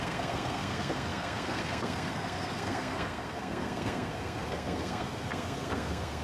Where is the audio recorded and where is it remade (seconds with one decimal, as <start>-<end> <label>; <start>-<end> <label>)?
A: 0.0-6.2 remade